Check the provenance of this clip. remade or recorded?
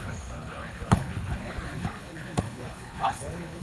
remade